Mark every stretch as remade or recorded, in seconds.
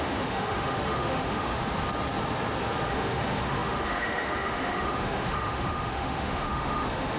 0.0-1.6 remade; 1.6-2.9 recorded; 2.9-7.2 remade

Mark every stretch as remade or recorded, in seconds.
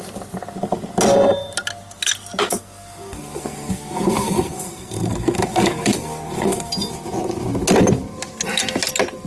0.0-2.4 recorded; 2.4-6.7 remade; 6.7-9.3 recorded